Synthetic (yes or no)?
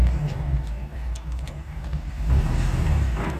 yes